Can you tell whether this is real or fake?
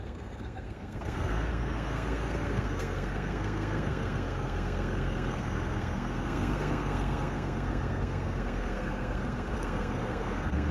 fake